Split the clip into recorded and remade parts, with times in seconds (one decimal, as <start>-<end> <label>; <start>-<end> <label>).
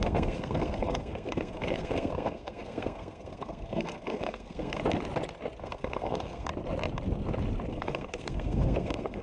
0.0-4.8 remade; 4.8-5.6 recorded; 5.6-6.5 remade; 6.5-7.7 recorded; 7.7-9.2 remade